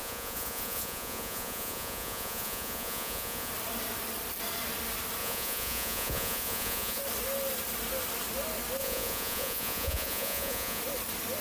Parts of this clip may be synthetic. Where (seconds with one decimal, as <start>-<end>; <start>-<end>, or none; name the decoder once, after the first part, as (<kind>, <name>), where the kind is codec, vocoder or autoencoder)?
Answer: 0.0-3.5 (vocoder, Vocos); 5.2-7.0; 8.8-10.8